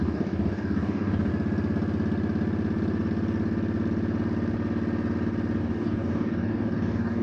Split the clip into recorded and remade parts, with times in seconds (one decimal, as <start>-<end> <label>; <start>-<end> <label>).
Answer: 0.0-1.3 remade; 1.3-5.6 recorded; 5.6-7.2 remade